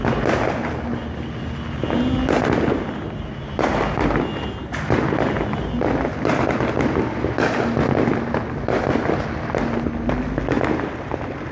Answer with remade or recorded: recorded